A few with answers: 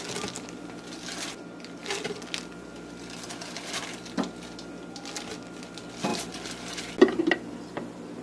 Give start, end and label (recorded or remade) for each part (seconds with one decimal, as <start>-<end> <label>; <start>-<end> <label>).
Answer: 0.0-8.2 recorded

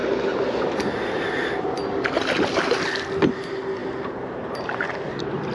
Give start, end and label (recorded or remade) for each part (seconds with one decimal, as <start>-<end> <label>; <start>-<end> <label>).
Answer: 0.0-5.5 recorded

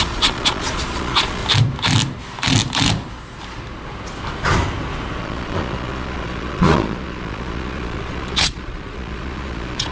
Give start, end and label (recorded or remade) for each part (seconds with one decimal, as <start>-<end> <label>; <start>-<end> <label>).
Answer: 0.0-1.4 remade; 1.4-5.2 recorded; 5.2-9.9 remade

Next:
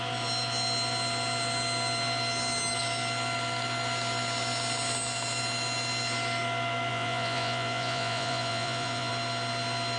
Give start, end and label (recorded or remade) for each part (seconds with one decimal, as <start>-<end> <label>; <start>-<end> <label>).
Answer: 0.0-6.9 recorded; 6.9-9.1 remade; 9.1-10.0 recorded

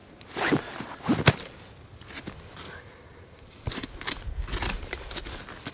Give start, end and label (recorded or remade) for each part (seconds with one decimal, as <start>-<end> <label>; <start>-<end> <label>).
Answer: 0.0-5.7 recorded

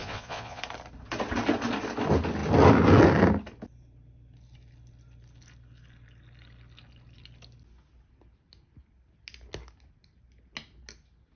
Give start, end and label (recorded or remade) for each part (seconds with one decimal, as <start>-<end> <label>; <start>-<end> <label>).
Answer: 0.0-0.6 remade; 0.6-11.4 recorded

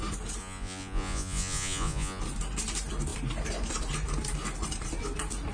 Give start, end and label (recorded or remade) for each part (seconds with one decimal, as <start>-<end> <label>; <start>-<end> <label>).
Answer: 0.0-0.4 recorded; 0.4-2.2 remade; 2.2-5.5 recorded